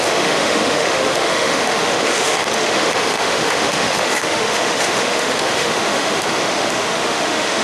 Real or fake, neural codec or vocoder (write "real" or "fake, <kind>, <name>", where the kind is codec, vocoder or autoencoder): fake, autoencoder, DAC-VAE